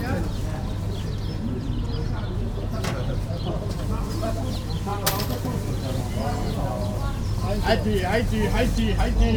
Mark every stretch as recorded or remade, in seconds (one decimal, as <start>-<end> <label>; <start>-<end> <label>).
0.0-9.4 recorded